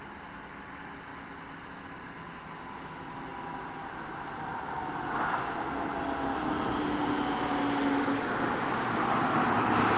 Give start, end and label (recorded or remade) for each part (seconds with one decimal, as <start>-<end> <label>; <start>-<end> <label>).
0.0-10.0 recorded